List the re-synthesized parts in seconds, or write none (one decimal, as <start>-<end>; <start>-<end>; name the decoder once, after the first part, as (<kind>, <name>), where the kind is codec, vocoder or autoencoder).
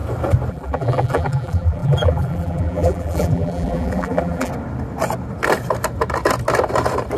0.5-4.5 (vocoder, BigVGAN v2)